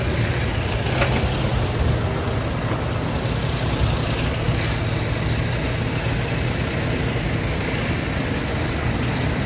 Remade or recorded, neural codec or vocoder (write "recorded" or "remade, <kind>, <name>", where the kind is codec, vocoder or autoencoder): recorded